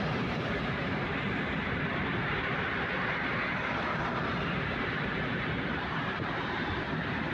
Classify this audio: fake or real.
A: fake